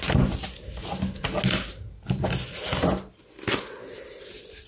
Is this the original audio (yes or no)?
yes